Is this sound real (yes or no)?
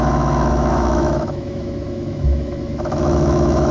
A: no